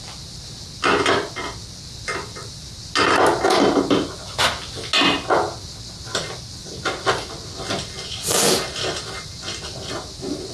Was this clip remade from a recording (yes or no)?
no